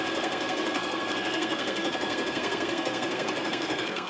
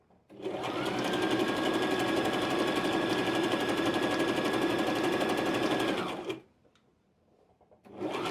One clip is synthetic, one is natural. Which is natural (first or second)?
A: second